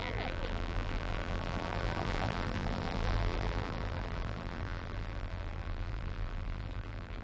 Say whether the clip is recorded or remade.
remade